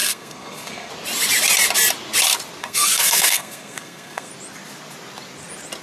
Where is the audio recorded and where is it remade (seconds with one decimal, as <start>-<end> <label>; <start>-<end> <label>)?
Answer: 0.0-0.9 remade; 0.9-2.6 recorded; 2.6-4.3 remade; 4.3-5.8 recorded